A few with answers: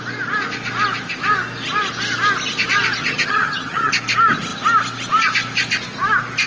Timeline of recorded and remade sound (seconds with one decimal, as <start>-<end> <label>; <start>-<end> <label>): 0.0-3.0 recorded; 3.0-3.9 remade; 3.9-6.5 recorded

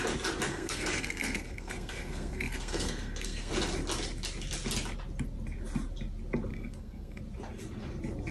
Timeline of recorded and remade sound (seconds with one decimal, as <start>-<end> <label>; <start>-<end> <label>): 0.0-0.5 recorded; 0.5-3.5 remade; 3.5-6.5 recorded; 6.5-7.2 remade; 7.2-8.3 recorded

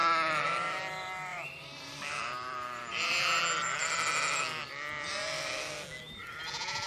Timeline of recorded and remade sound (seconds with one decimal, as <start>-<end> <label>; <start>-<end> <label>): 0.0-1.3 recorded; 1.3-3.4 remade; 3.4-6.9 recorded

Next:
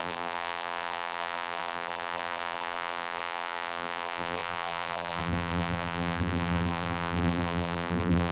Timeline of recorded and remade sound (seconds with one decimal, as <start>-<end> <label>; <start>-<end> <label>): 0.0-8.3 remade

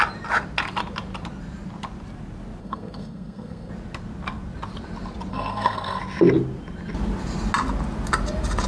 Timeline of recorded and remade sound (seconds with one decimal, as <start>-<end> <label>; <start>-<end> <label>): 0.0-2.6 recorded; 2.6-3.7 remade; 3.7-5.3 recorded; 5.3-6.0 remade; 6.0-8.7 recorded